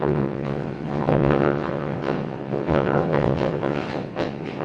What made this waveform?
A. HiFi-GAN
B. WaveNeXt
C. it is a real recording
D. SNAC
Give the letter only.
B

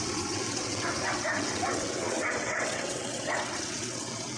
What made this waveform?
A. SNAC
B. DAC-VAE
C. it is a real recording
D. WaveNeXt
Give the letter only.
D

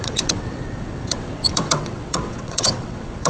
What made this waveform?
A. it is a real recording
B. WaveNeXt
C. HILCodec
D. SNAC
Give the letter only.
B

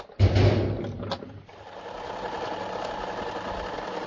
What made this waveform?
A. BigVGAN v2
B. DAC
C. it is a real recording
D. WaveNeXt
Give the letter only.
C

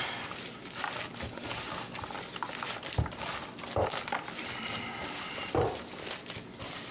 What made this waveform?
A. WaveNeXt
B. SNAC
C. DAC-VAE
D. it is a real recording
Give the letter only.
D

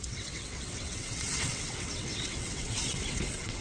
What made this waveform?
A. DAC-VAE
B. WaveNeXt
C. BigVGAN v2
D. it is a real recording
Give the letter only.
B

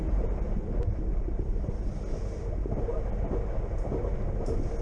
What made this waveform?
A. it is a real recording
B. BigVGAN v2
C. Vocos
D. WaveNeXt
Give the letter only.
A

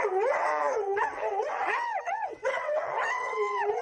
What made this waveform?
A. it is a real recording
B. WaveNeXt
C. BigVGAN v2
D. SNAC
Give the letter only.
B